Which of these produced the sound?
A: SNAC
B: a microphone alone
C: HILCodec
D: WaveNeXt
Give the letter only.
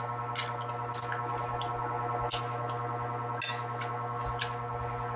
B